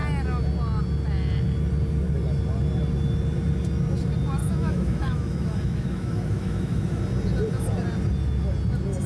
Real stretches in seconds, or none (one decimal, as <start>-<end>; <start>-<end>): 0.0-4.4; 7.0-9.1